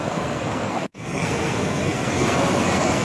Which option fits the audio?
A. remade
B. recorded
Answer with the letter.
A